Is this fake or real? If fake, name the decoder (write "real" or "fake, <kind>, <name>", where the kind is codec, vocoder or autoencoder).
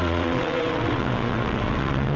fake, vocoder, WaveNeXt